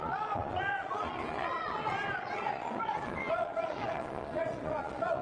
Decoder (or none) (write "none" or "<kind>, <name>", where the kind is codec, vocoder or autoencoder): vocoder, Vocos